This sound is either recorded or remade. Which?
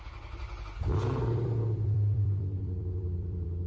remade